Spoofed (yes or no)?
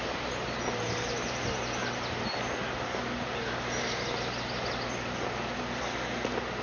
no